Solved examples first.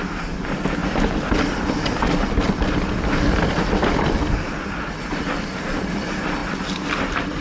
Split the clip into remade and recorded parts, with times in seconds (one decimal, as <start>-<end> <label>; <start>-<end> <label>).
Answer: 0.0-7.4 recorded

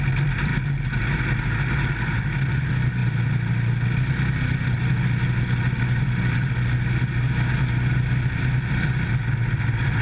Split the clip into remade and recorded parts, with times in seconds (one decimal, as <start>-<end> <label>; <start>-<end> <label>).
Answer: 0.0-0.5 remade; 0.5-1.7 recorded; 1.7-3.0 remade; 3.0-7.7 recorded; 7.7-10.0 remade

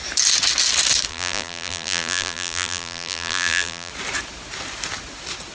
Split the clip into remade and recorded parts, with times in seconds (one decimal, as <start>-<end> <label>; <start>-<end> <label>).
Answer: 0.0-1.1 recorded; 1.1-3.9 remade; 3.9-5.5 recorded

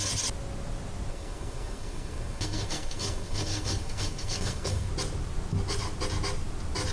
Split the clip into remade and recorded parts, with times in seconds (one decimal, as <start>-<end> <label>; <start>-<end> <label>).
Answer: 0.0-1.1 recorded; 1.1-4.9 remade; 4.9-6.9 recorded

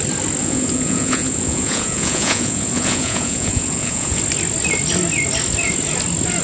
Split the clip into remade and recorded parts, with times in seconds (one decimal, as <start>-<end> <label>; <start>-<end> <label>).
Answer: 0.0-0.4 recorded; 0.4-4.2 remade; 4.2-6.4 recorded